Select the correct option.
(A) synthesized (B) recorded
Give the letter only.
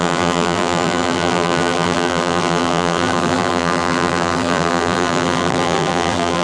A